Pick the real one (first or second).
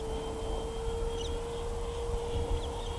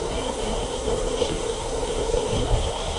first